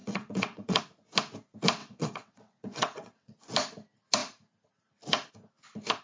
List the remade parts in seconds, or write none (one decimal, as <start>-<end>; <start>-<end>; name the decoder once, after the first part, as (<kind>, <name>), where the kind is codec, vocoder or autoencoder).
0.0-0.8 (vocoder, WaveNeXt); 1.8-3.4